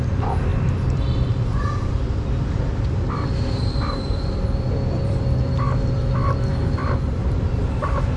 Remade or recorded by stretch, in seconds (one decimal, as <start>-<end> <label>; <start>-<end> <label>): 0.0-0.5 recorded; 0.5-5.2 remade; 5.2-6.5 recorded; 6.5-7.4 remade; 7.4-8.2 recorded